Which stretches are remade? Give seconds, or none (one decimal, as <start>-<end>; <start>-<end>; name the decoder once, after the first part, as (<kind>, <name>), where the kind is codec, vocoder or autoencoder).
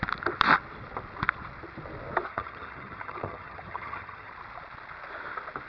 2.3-4.3 (vocoder, HiFi-GAN)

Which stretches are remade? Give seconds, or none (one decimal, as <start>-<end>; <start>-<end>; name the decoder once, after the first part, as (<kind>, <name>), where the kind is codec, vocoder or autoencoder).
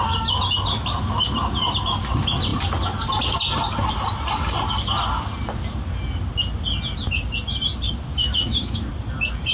8.1-8.9 (autoencoder, DAC-VAE)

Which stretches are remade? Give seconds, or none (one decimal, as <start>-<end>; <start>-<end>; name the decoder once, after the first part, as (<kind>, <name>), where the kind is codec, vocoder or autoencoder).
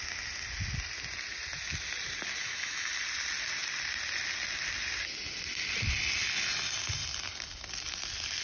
2.4-2.9 (autoencoder, DAC-VAE)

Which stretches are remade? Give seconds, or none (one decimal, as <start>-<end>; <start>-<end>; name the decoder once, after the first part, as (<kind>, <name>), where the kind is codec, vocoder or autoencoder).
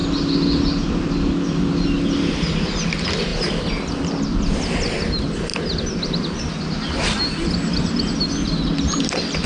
none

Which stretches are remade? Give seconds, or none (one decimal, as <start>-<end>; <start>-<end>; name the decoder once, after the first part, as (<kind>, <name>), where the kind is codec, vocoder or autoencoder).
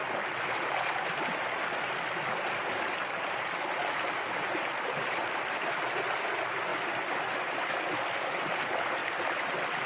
none